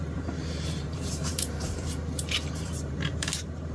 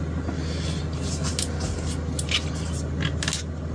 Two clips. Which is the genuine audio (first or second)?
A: second